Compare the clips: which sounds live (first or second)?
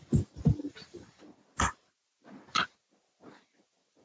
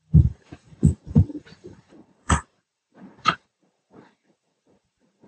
first